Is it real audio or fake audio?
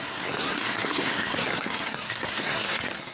fake